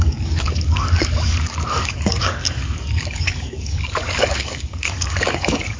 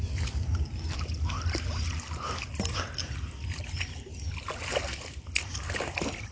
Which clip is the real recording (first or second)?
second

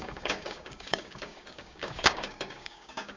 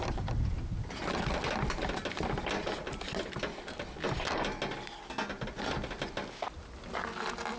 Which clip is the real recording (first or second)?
second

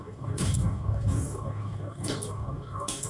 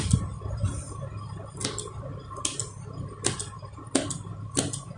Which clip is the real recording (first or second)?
second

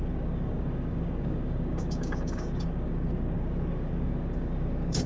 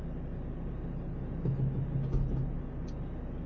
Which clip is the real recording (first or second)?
second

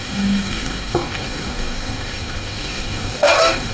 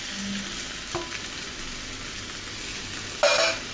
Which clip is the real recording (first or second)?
second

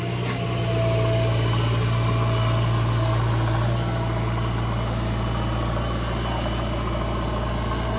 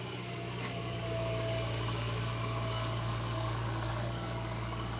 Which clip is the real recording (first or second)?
first